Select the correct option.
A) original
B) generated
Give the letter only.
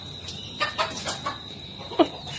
A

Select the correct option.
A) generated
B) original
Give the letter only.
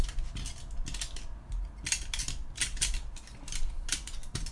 B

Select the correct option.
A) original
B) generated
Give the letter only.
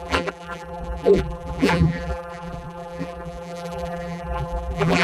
B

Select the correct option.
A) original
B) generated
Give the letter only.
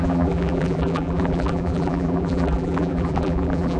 B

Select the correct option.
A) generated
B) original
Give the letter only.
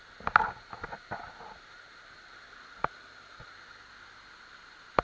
B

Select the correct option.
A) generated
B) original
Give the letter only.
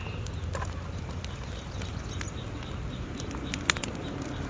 A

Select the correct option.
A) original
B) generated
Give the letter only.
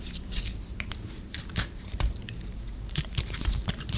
B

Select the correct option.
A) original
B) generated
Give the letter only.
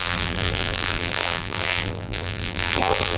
B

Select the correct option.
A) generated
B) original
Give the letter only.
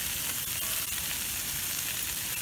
B